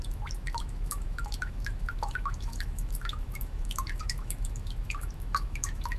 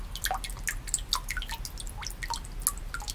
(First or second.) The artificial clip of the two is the first